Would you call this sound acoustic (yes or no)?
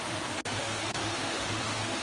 no